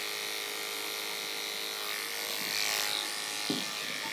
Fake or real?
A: real